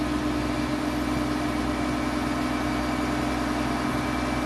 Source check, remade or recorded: recorded